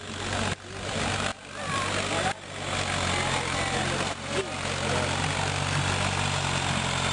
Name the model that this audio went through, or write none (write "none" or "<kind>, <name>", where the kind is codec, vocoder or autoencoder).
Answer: none